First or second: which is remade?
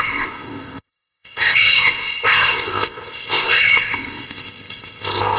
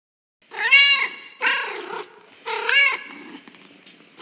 first